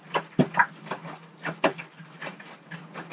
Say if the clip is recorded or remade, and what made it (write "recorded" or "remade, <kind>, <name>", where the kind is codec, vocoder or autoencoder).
recorded